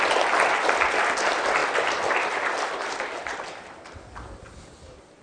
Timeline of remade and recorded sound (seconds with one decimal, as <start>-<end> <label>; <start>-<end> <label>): 0.0-5.2 recorded